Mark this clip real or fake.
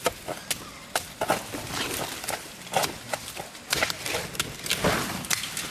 real